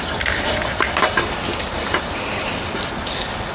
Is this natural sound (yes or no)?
yes